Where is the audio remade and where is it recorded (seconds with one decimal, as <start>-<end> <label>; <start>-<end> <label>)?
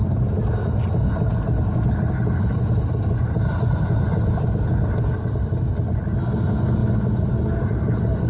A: 0.0-8.3 recorded